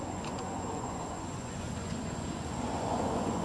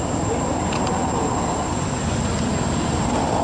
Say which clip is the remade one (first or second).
first